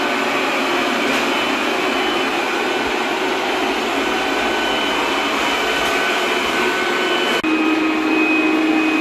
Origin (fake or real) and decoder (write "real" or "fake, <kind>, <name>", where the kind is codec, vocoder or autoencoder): real